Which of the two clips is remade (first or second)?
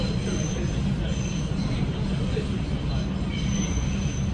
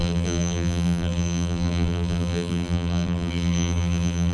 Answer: second